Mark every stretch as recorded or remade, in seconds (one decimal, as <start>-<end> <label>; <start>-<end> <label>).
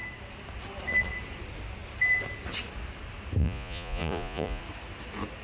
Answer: 0.0-3.4 recorded; 3.4-4.6 remade; 4.6-5.4 recorded